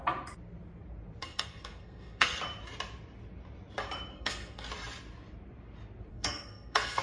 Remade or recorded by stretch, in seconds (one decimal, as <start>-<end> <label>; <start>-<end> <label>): 0.0-1.2 recorded; 1.2-2.4 remade; 2.4-4.1 recorded; 4.1-4.7 remade; 4.7-6.1 recorded; 6.1-7.0 remade